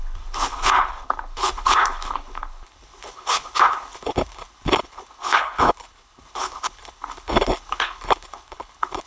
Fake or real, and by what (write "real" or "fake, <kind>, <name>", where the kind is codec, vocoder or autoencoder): fake, codec, HILCodec